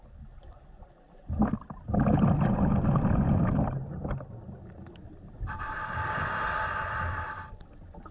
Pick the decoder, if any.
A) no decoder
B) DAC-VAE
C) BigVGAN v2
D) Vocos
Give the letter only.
A